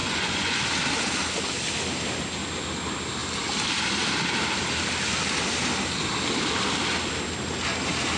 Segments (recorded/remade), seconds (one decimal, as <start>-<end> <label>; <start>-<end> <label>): 0.0-0.6 remade; 0.6-8.2 recorded